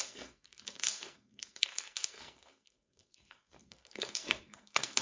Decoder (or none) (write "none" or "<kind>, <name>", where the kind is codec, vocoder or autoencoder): codec, SNAC